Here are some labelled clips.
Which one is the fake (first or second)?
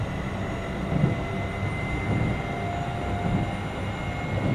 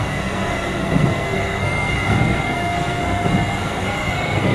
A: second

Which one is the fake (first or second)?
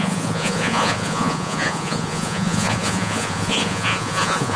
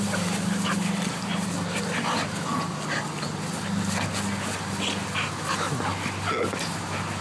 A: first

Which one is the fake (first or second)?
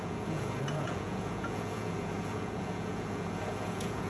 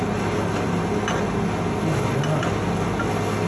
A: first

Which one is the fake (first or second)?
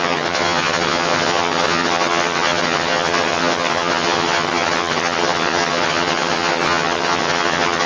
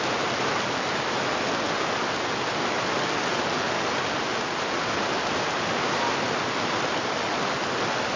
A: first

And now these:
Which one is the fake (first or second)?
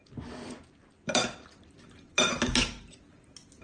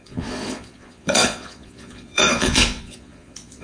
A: second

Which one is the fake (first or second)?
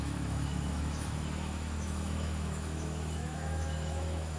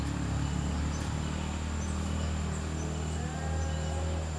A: first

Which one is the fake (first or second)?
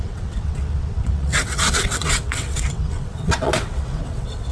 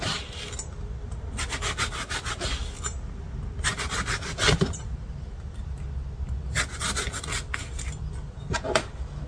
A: first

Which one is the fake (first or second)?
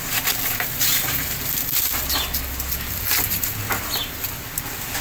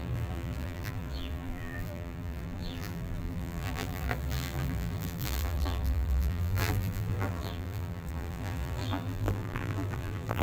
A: second